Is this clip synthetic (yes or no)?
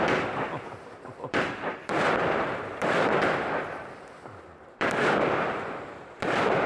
yes